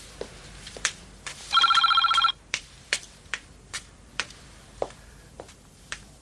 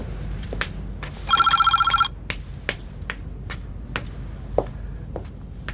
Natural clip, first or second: second